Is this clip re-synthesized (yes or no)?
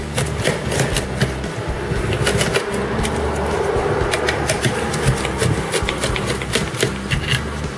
no